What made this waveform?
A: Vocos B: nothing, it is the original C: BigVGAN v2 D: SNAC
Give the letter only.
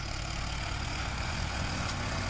A